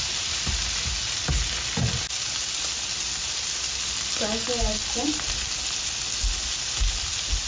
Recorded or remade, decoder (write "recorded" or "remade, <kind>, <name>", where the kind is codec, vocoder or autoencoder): recorded